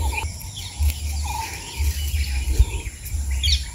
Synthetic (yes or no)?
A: no